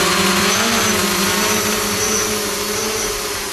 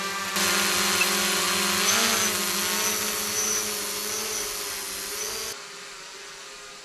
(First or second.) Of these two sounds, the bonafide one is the second